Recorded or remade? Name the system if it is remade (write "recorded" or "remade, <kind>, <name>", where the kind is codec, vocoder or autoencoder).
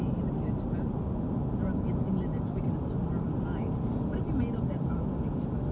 recorded